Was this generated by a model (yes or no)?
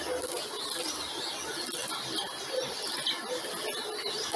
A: no